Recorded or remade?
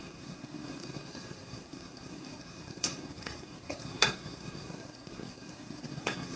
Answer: remade